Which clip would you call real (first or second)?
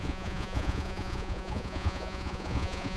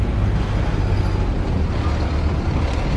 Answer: second